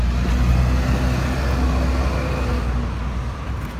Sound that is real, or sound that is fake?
real